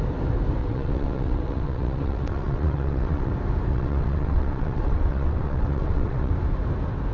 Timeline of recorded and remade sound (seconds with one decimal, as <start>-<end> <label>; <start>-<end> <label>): 0.0-0.6 recorded; 0.6-3.3 remade; 3.3-3.7 recorded; 3.7-6.3 remade; 6.3-7.1 recorded